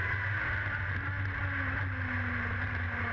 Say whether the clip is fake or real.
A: real